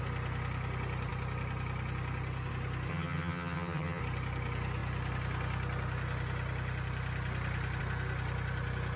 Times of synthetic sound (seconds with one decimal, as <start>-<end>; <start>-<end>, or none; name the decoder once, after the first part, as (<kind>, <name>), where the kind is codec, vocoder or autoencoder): 2.9-4.0 (vocoder, HiFi-GAN)